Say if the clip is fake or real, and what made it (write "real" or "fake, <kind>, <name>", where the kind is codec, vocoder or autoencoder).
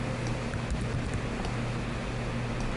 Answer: real